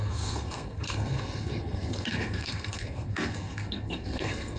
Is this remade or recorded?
remade